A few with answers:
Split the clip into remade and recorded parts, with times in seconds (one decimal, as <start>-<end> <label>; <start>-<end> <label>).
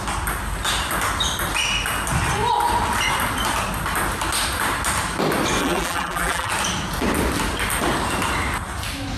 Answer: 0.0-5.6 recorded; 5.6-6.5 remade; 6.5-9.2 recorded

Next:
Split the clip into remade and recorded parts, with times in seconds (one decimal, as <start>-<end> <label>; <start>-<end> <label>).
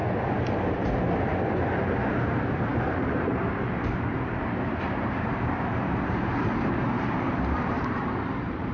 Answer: 0.0-2.1 recorded; 2.1-8.7 remade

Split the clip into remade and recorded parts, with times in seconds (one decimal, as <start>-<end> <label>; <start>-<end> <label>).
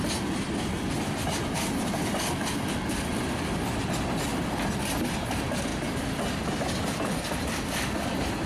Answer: 0.0-8.5 recorded